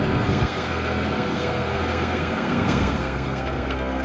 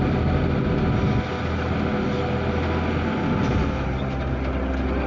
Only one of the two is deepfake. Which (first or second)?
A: first